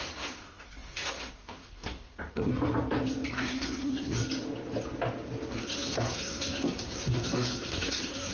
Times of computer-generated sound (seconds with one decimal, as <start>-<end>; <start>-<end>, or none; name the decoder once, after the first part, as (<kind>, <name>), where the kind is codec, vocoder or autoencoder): 0.0-2.5 (codec, SNAC); 3.3-4.2; 5.5-8.3